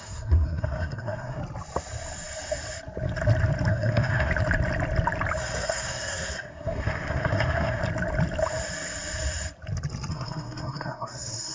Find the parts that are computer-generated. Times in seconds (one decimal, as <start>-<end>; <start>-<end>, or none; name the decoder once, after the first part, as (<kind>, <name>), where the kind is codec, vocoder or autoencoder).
0.0-1.4 (codec, SNAC); 3.7-4.3; 5.4-7.8; 10.1-11.5